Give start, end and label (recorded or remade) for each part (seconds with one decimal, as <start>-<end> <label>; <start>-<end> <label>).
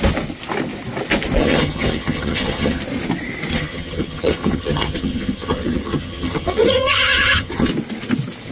0.0-1.4 recorded; 1.4-2.8 remade; 2.8-3.5 recorded; 3.5-7.7 remade; 7.7-8.5 recorded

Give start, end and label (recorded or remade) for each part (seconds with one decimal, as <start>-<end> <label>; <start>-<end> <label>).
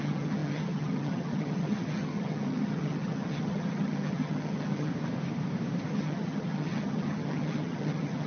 0.0-4.9 remade; 4.9-5.9 recorded; 5.9-8.3 remade